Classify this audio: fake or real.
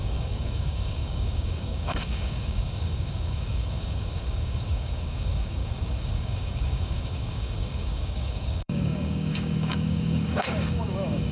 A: fake